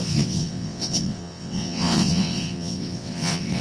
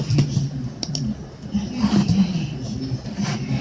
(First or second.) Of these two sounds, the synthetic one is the first